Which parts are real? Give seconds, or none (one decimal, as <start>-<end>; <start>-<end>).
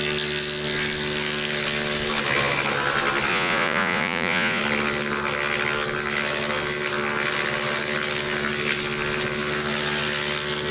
0.0-3.3; 4.6-10.7